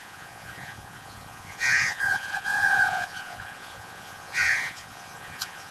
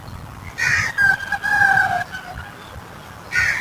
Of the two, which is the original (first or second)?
second